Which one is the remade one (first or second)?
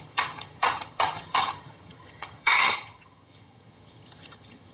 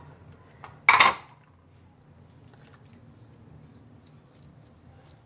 first